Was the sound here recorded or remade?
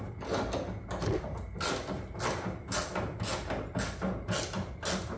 recorded